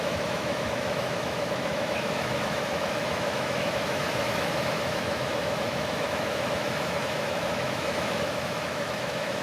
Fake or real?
fake